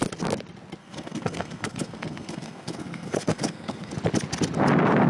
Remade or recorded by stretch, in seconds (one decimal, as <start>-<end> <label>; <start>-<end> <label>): 0.0-0.8 recorded; 0.8-3.9 remade; 3.9-5.1 recorded